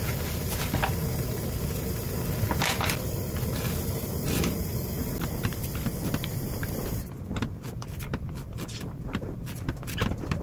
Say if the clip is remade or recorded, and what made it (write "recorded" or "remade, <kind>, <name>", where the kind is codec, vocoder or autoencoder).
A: remade, vocoder, BigVGAN v2